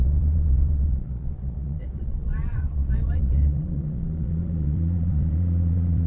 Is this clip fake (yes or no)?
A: yes